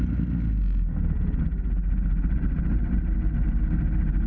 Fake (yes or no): no